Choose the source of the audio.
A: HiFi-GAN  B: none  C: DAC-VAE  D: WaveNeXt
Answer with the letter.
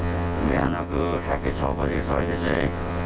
D